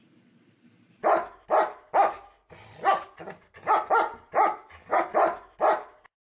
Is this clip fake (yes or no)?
no